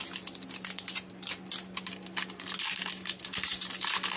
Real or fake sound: real